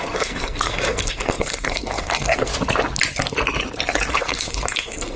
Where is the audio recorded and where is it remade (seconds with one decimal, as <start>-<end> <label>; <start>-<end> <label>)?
0.0-2.5 remade; 2.5-4.1 recorded; 4.1-5.2 remade